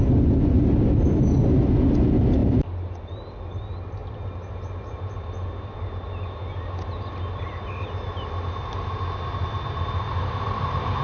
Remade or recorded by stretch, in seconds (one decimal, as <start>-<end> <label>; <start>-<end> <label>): 0.0-11.0 recorded